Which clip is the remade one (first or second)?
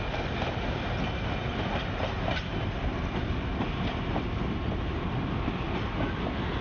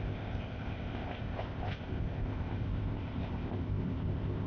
second